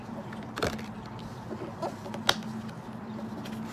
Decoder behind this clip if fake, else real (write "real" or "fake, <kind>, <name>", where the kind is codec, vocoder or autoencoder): real